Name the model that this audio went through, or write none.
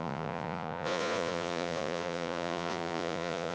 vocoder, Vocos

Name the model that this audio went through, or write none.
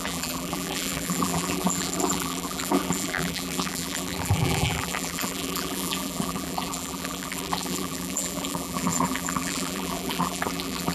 vocoder, BigVGAN v2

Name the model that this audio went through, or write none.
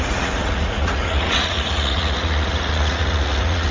vocoder, Vocos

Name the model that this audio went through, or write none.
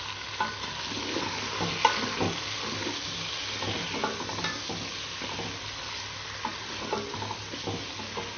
none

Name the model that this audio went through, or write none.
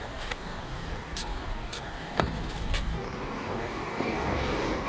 codec, DAC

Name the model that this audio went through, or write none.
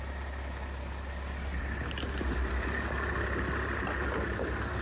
none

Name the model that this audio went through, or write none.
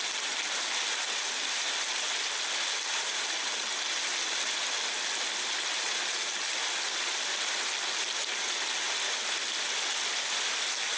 none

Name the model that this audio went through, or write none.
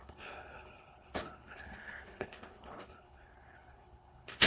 codec, HILCodec